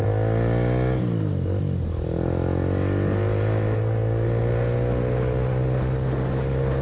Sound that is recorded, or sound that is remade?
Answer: recorded